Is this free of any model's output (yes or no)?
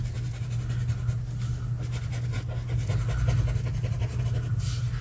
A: yes